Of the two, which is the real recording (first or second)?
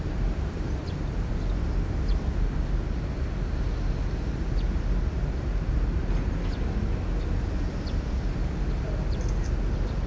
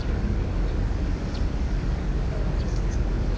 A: first